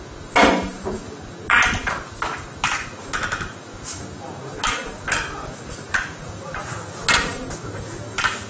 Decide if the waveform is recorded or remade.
recorded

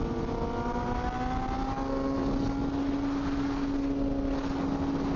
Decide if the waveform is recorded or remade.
recorded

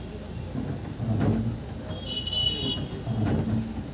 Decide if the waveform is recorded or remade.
recorded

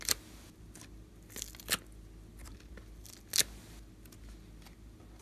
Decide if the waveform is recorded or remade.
recorded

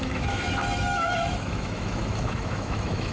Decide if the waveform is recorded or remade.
remade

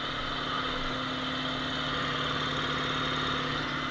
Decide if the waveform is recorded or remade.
recorded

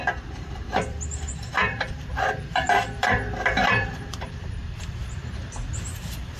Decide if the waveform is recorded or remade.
remade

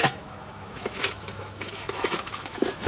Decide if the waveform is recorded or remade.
remade